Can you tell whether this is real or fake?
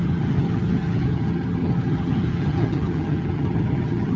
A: fake